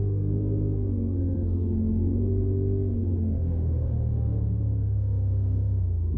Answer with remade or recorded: remade